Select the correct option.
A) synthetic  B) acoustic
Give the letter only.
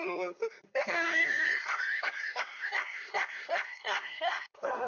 A